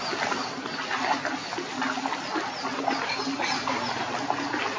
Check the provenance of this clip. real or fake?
real